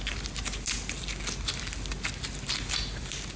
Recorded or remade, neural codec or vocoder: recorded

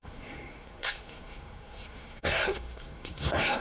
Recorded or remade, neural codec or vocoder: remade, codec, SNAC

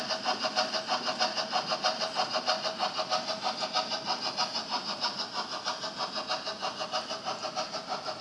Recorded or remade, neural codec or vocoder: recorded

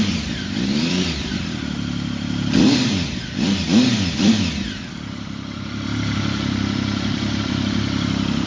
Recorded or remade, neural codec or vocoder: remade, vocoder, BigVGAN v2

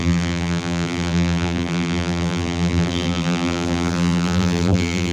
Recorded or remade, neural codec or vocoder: remade, vocoder, BigVGAN v2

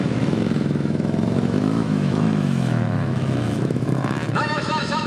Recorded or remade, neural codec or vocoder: remade, autoencoder, DAC-VAE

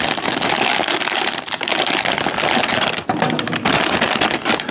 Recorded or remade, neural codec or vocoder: recorded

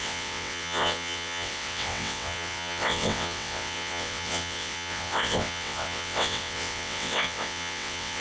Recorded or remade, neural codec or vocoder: remade, vocoder, WaveNeXt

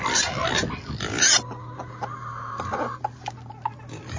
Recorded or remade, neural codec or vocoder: recorded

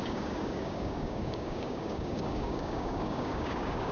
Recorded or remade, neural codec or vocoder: remade, codec, DAC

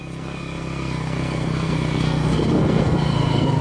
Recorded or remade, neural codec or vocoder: remade, codec, SNAC